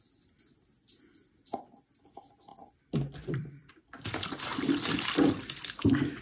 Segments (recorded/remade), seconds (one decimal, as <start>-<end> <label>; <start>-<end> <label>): 0.0-2.5 recorded; 2.5-3.7 remade; 3.7-4.5 recorded; 4.5-5.3 remade; 5.3-6.2 recorded